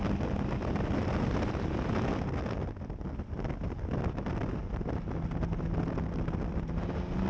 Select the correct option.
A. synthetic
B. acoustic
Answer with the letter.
B